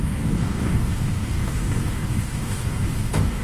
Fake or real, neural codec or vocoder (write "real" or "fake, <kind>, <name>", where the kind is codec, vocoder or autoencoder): fake, codec, DAC